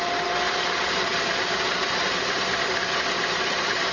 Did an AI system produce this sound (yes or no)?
no